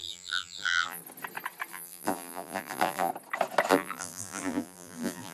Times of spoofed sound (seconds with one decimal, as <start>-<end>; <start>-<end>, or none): 0.0-1.0; 1.7-3.1; 3.7-5.3